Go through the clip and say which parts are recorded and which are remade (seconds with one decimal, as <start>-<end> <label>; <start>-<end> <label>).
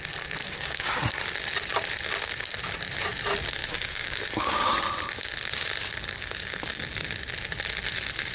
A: 0.0-0.4 recorded; 0.4-0.9 remade; 0.9-3.6 recorded; 3.6-4.7 remade; 4.7-8.3 recorded